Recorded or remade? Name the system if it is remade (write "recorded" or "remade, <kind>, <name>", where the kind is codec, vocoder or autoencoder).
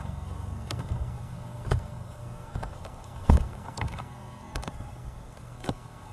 remade, codec, SNAC